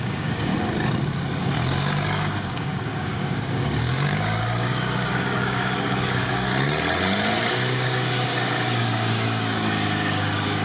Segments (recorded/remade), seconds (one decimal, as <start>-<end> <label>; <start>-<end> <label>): 0.0-0.5 remade; 0.5-1.4 recorded; 1.4-6.5 remade; 6.5-7.5 recorded; 7.5-10.6 remade